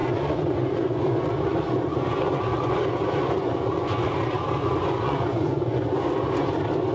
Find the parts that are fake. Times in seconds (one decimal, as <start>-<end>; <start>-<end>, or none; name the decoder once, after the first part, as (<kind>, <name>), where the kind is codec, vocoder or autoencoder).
0.0-4.1 (vocoder, Vocos); 4.6-6.5